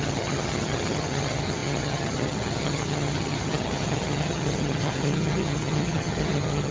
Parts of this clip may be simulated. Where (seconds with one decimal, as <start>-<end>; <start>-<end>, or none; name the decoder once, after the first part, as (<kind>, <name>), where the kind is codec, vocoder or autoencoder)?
0.0-6.7 (vocoder, HiFi-GAN)